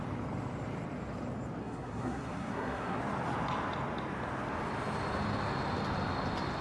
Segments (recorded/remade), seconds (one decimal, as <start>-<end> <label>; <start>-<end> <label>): 0.0-1.6 recorded; 1.6-3.0 remade; 3.0-6.6 recorded